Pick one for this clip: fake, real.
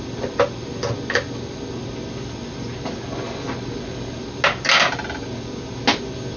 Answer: real